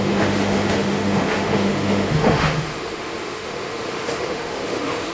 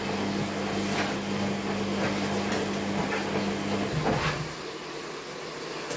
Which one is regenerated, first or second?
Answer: first